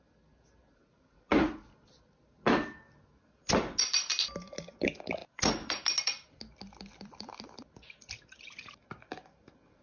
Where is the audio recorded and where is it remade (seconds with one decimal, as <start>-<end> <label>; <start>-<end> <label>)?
0.0-9.8 recorded